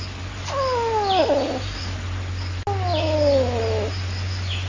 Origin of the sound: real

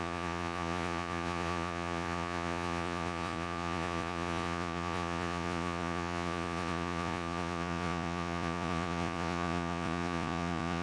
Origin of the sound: fake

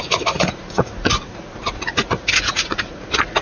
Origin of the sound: fake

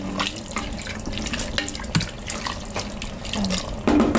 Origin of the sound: real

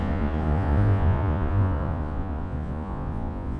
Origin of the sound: fake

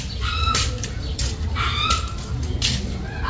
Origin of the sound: real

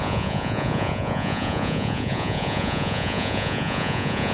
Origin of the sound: fake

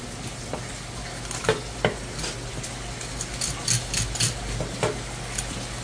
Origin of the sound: real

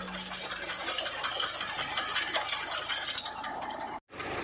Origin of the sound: real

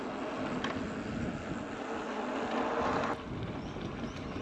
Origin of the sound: real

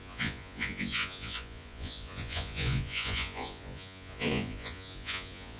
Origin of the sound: fake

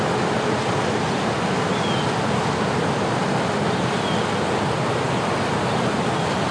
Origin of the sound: real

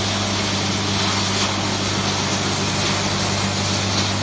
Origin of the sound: real